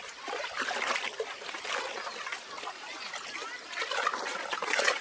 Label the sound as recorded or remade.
recorded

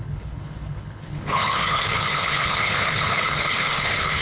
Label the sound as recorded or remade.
remade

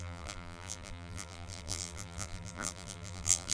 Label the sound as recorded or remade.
remade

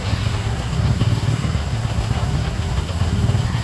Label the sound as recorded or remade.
remade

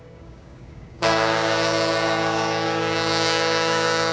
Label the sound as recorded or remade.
remade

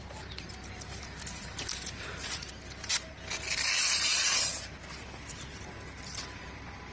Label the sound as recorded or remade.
recorded